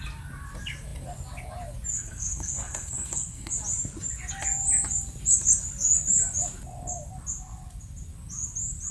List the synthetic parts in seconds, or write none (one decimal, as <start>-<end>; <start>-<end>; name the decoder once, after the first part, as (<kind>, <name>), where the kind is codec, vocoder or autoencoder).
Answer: 1.9-3.5 (codec, SNAC)